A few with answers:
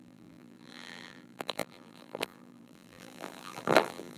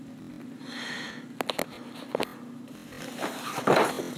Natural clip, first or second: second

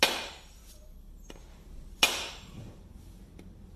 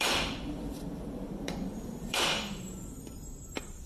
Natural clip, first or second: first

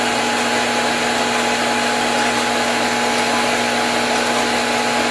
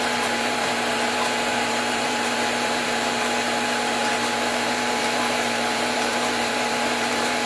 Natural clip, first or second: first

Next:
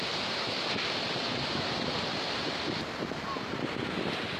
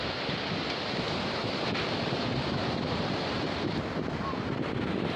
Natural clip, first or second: first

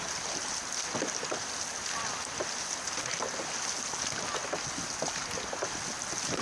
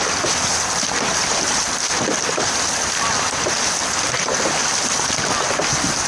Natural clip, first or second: first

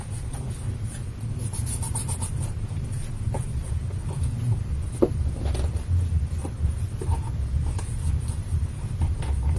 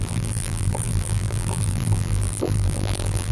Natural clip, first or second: first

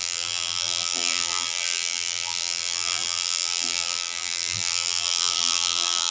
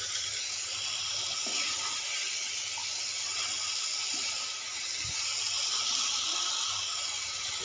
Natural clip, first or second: second